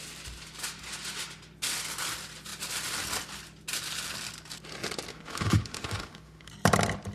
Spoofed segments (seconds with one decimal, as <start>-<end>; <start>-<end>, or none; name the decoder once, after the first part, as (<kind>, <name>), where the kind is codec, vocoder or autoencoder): 5.1-6.5 (autoencoder, DAC-VAE)